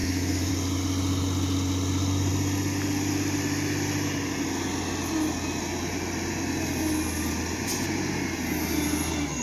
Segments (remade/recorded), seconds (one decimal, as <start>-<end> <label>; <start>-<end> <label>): 0.0-0.5 remade; 0.5-9.4 recorded